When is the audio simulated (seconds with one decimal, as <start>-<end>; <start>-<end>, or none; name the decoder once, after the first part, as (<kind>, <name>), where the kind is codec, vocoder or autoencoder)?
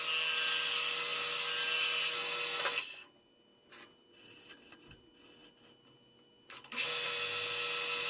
5.4-6.9 (vocoder, BigVGAN v2)